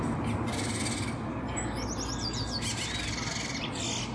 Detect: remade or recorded recorded